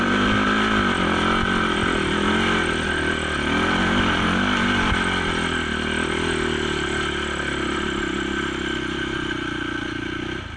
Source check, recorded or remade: recorded